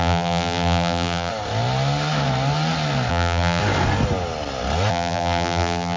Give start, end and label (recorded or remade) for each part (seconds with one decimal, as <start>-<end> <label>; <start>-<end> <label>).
0.0-1.3 remade; 1.3-3.1 recorded; 3.1-3.6 remade; 3.6-4.9 recorded; 4.9-6.0 remade